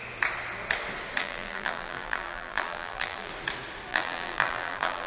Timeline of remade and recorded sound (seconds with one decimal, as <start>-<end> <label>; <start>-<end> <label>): 0.0-1.2 recorded; 1.2-3.3 remade; 3.3-3.9 recorded; 3.9-5.1 remade